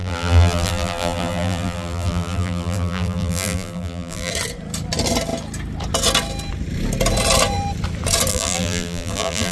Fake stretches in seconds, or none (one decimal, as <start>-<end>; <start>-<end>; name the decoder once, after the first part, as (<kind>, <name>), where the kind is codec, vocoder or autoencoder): 0.0-4.3 (vocoder, BigVGAN v2); 8.3-9.5